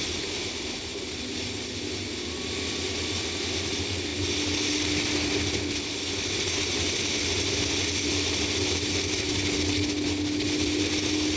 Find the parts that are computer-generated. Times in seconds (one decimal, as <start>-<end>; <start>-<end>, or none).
none